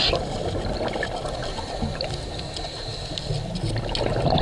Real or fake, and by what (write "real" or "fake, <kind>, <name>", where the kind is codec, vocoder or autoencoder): real